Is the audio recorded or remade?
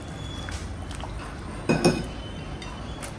recorded